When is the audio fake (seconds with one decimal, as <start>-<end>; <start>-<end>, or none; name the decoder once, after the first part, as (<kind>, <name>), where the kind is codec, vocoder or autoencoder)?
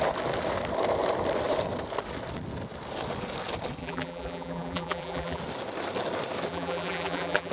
3.8-5.4 (vocoder, BigVGAN v2); 6.5-7.5